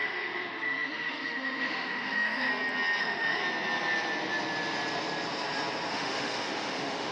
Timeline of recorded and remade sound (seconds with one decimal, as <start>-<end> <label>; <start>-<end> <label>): 0.0-2.5 remade; 2.5-3.0 recorded; 3.0-3.4 remade; 3.4-5.9 recorded; 5.9-7.1 remade